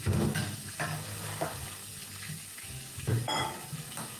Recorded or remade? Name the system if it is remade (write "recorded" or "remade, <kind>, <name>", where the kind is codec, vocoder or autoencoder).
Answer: remade, codec, DAC